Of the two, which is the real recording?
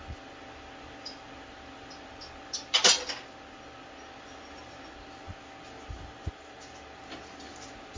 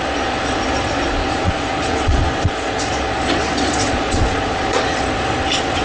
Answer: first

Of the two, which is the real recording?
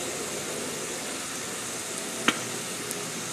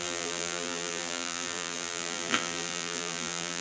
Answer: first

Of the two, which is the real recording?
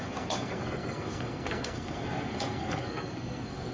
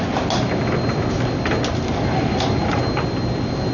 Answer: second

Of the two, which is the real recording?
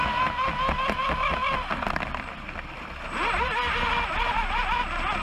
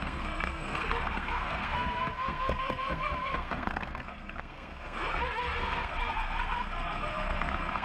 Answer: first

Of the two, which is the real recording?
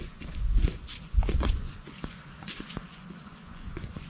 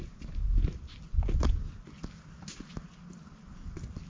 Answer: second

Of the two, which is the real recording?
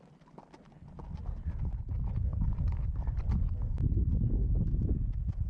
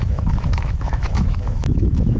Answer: first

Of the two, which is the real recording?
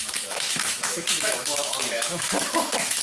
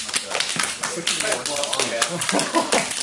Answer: second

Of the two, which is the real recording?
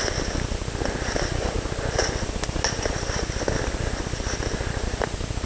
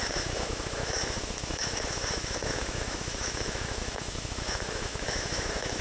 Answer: first